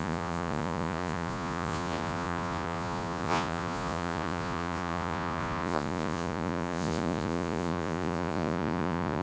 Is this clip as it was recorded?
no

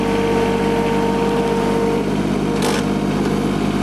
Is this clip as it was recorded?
yes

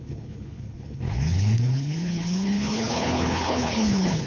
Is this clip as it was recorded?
no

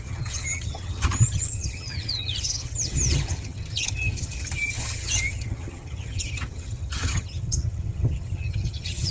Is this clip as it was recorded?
no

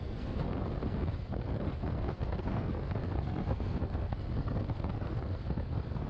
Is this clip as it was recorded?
no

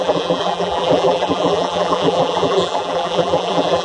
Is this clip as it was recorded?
no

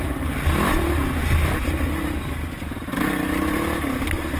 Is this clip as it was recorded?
yes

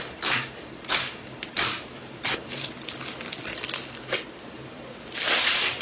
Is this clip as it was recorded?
yes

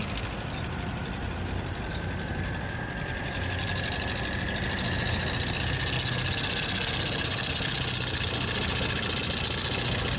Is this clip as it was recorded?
yes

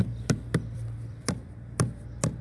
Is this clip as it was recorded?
no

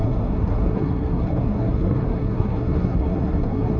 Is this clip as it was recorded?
no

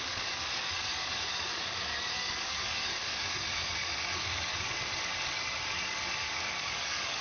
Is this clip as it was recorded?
no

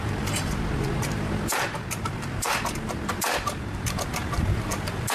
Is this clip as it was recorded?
no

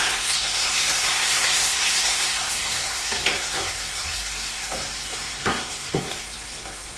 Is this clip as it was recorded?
no